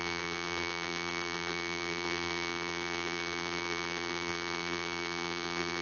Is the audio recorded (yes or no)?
no